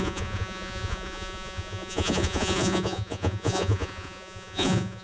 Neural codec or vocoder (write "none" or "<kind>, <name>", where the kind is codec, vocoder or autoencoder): vocoder, Vocos